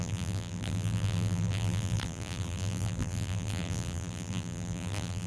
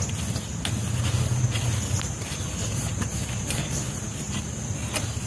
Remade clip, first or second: first